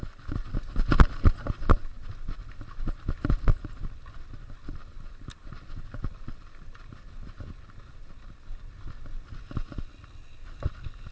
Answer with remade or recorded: recorded